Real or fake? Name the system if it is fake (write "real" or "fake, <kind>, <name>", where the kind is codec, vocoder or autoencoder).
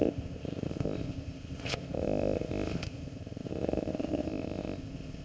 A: fake, codec, ZipCodec